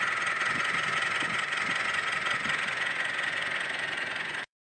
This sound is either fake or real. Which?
fake